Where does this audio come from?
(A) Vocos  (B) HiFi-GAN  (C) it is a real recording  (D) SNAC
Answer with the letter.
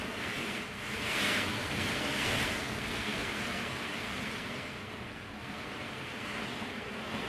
D